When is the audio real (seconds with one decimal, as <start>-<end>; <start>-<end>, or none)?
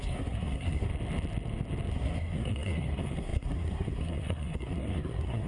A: 0.9-1.9